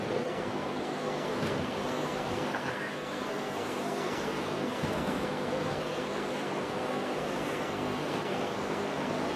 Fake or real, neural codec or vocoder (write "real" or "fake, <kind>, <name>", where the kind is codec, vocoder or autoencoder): fake, codec, SNAC